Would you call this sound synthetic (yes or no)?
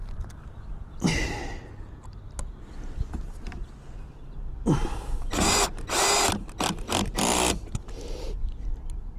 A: no